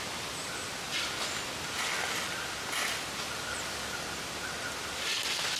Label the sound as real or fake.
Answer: real